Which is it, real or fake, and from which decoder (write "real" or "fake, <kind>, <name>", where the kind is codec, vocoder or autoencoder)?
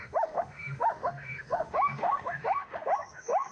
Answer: fake, autoencoder, DAC-VAE